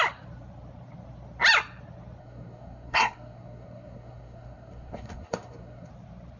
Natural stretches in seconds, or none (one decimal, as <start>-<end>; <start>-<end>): 0.0-2.2; 5.9-6.4